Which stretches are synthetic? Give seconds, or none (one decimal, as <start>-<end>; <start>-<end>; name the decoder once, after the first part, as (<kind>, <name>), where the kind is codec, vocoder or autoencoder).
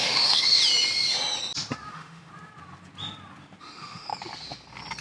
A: 0.0-0.6 (autoencoder, DAC-VAE); 1.9-2.3; 3.6-4.1